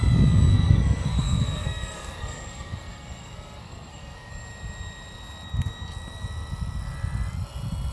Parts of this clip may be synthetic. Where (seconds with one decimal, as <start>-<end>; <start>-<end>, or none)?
0.5-4.3

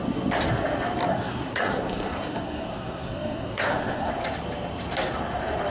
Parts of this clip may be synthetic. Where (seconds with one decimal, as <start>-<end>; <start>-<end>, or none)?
1.1-4.1